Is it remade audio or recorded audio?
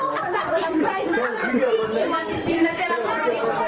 remade